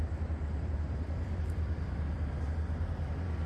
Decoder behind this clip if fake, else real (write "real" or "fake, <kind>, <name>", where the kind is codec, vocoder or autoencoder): fake, vocoder, BigVGAN v2